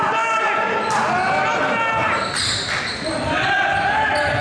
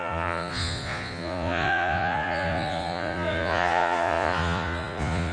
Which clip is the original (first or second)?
first